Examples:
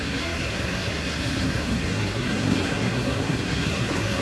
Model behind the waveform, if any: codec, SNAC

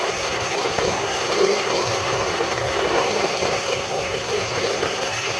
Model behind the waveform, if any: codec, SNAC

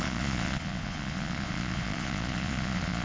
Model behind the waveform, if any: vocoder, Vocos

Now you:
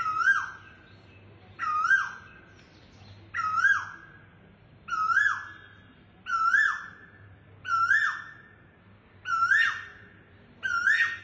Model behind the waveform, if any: none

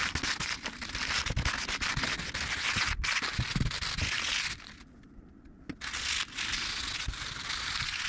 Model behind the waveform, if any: none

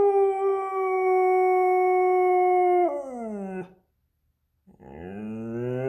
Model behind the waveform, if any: none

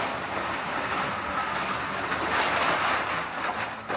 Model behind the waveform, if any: none